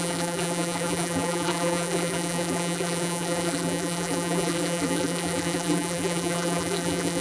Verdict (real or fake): fake